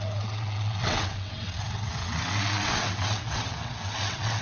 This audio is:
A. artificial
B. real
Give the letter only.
A